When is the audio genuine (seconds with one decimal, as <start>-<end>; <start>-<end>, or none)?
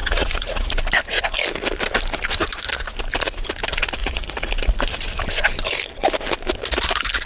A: 0.7-4.0; 4.5-7.3